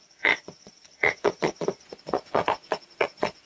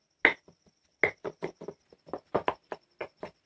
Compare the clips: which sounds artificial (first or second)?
first